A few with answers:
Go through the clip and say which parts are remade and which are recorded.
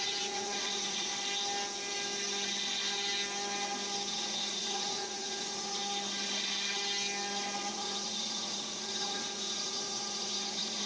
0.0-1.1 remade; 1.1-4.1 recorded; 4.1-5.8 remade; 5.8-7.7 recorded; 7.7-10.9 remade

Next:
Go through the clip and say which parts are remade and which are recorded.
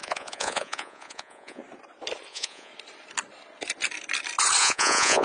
0.0-1.6 remade; 1.6-2.3 recorded; 2.3-2.7 remade; 2.7-4.6 recorded; 4.6-5.2 remade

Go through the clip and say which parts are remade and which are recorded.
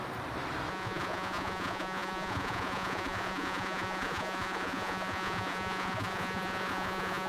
0.0-0.7 recorded; 0.7-7.3 remade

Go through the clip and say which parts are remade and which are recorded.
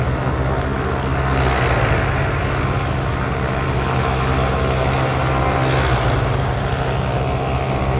0.0-8.0 recorded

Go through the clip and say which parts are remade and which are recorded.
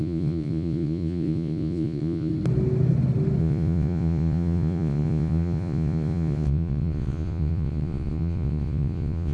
0.0-2.3 remade; 2.3-3.4 recorded; 3.4-9.3 remade